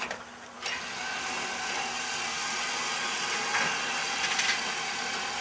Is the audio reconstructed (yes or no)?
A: no